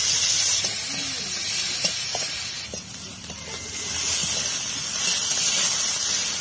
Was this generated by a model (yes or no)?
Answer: no